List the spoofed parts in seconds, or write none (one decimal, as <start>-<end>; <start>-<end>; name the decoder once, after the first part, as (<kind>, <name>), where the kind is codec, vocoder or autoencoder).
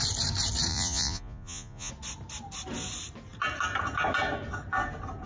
0.7-1.9 (vocoder, Vocos)